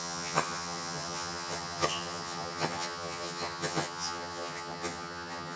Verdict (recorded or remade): remade